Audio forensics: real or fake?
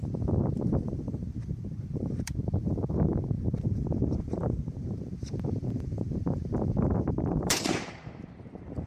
fake